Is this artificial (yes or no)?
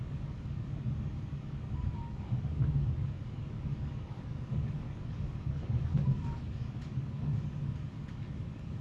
yes